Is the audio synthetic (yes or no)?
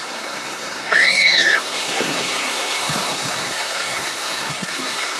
yes